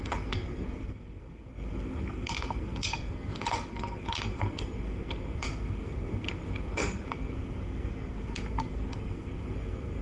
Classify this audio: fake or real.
fake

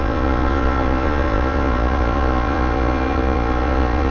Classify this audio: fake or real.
fake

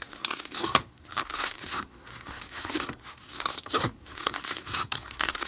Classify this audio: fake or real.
fake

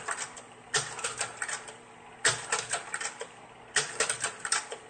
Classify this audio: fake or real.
real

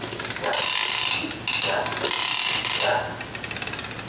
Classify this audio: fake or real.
real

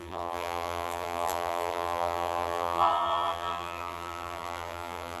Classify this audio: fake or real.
fake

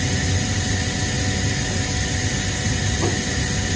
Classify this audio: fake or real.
real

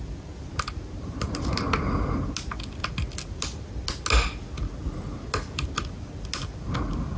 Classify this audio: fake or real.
real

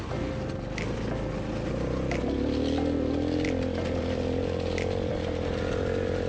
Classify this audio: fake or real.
real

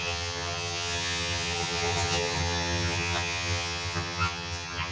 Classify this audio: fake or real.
fake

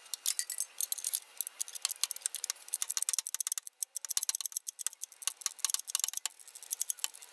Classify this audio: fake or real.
real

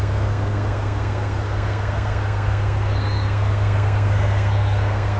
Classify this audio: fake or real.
fake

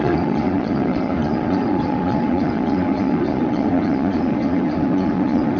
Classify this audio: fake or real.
fake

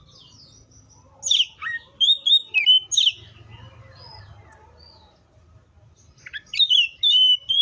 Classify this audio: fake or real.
real